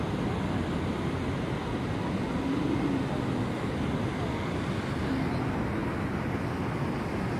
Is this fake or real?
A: real